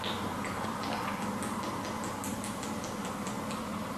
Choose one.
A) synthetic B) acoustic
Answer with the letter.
B